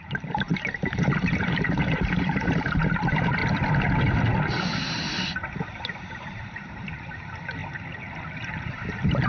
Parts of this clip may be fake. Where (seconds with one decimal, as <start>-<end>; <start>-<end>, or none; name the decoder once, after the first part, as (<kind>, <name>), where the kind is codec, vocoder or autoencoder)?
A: 0.0-0.5 (vocoder, BigVGAN v2); 1.0-3.4; 6.1-7.6; 8.4-9.3